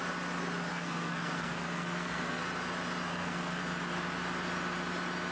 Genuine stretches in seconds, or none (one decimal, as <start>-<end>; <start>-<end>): 0.0-0.7; 2.4-3.1; 3.6-5.3